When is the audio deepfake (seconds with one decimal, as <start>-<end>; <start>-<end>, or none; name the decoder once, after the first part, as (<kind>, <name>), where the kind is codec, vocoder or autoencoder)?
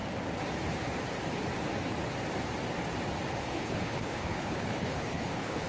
3.4-5.7 (codec, HILCodec)